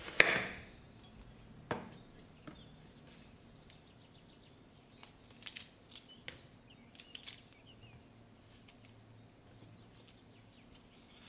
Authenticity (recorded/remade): recorded